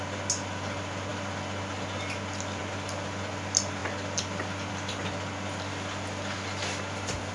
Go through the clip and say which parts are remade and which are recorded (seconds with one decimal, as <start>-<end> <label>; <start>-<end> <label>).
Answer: 0.0-7.3 recorded